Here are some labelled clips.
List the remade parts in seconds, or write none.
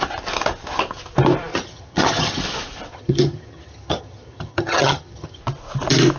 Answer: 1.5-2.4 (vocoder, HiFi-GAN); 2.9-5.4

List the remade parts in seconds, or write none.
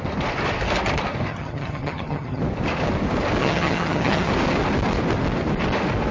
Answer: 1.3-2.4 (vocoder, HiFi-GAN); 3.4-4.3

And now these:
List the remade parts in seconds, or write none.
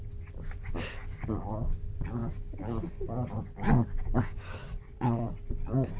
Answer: 4.6-5.3 (vocoder, Vocos)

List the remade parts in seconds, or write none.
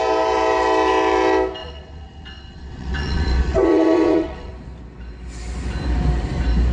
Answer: 1.6-4.5 (vocoder, WaveNeXt)